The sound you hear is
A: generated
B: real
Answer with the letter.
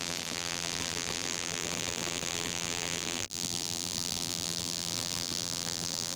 A